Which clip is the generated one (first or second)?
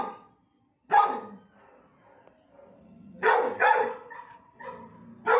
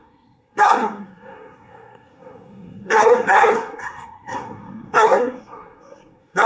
second